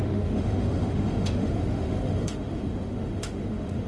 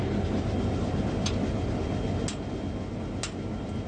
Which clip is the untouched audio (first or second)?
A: second